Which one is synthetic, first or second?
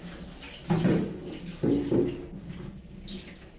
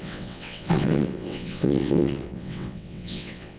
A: second